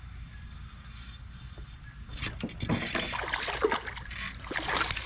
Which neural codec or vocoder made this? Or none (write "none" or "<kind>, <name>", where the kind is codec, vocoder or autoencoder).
none